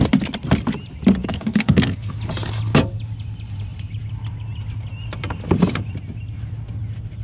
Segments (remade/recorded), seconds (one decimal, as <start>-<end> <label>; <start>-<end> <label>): 0.0-1.2 recorded; 1.2-2.1 remade; 2.1-7.2 recorded